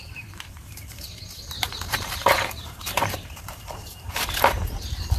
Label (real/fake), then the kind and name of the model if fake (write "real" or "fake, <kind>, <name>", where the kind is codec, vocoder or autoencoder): fake, vocoder, BigVGAN v2